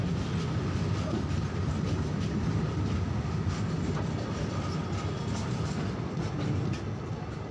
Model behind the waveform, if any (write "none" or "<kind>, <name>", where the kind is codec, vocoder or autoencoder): none